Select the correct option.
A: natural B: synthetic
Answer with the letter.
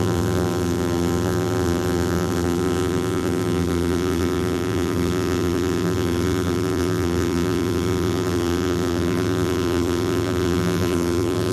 B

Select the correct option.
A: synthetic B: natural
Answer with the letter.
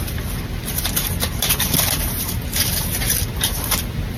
B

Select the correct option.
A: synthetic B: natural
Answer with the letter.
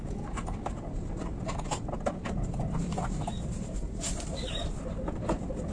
A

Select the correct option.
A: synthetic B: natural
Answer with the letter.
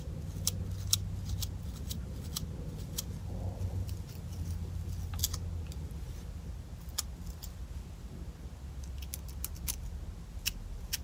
B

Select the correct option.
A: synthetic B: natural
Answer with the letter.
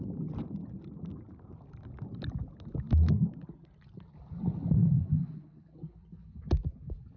B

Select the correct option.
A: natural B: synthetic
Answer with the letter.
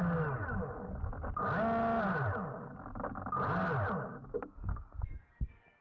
A